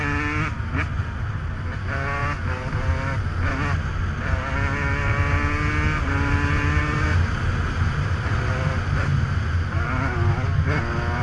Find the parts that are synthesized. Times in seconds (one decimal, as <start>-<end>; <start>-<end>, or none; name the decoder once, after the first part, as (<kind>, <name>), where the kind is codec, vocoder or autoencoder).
none